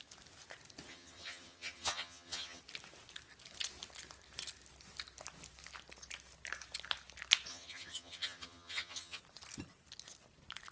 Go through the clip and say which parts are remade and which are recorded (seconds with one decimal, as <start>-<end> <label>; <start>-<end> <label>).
0.0-0.9 recorded; 0.9-2.6 remade; 2.6-7.5 recorded; 7.5-9.2 remade; 9.2-10.7 recorded